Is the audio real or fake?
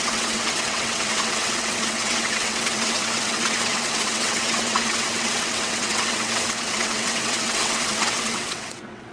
fake